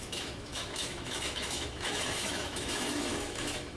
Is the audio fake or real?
fake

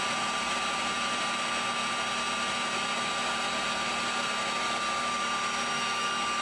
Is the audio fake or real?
real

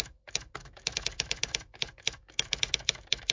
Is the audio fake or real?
fake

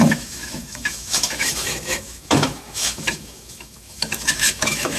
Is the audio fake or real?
fake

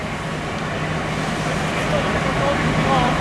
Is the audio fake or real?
real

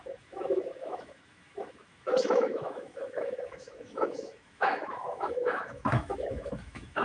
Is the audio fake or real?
fake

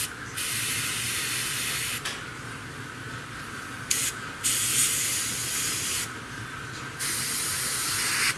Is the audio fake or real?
real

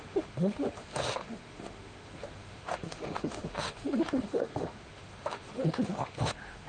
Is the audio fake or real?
fake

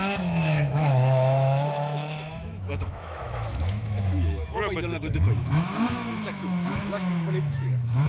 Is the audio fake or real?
fake